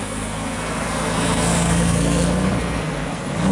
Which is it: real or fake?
fake